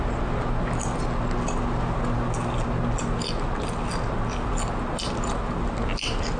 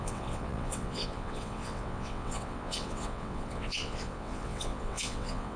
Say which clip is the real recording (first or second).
first